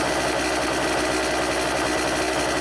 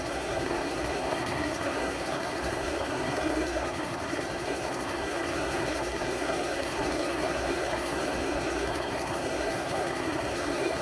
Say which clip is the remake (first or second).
second